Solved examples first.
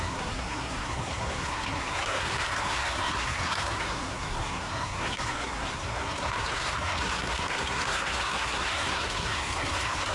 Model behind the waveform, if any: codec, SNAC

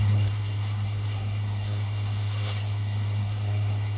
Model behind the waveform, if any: codec, SNAC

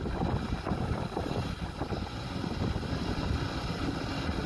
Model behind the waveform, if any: none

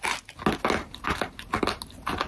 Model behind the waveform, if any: none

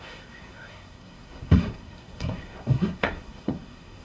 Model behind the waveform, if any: codec, SNAC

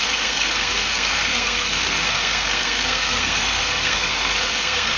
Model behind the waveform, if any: codec, SNAC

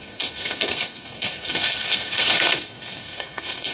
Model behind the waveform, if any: codec, SNAC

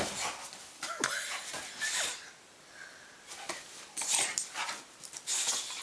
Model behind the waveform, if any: none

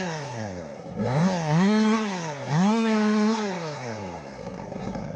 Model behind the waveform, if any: codec, SNAC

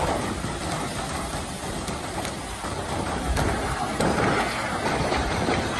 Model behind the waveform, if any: none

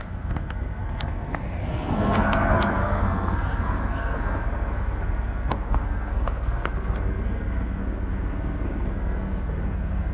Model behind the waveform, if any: codec, SNAC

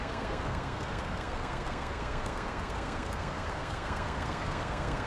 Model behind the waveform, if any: codec, SNAC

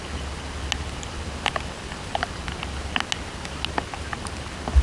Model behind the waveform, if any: none